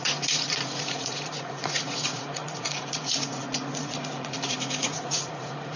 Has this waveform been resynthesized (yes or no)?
yes